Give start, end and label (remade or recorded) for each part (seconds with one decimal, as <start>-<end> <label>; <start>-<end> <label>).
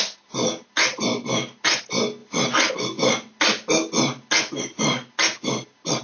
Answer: 0.0-6.0 recorded